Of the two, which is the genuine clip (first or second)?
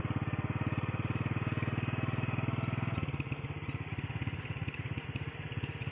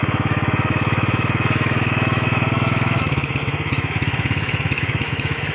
first